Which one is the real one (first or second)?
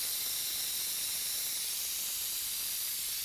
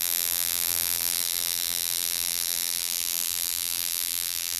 first